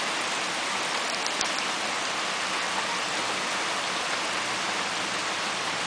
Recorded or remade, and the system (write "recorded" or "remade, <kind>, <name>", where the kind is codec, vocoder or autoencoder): recorded